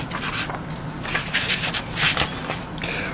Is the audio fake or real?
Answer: real